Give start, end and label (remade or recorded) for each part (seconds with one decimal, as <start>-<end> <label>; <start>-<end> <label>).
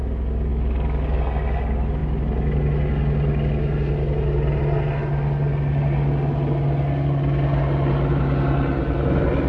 0.0-0.5 recorded; 0.5-1.2 remade; 1.2-9.5 recorded